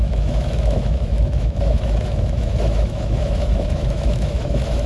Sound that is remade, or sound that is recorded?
remade